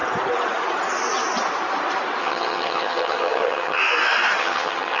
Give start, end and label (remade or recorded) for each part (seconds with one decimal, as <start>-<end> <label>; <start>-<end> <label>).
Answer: 0.0-2.2 recorded; 2.2-3.8 remade; 3.8-4.4 recorded; 4.4-5.0 remade